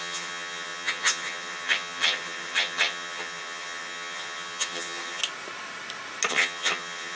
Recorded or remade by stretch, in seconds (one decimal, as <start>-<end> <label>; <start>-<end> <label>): 0.0-5.2 remade; 5.2-6.3 recorded; 6.3-7.2 remade